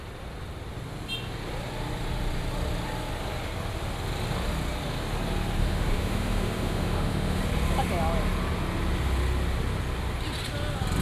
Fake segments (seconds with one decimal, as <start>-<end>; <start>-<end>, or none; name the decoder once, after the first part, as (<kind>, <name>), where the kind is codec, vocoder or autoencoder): 5.6-7.4 (autoencoder, DAC-VAE)